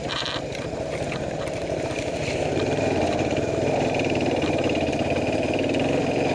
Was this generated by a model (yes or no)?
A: yes